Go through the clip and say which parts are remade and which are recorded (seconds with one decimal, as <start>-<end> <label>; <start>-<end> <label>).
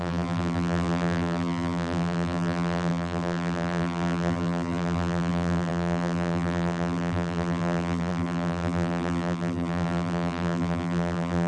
0.0-11.5 remade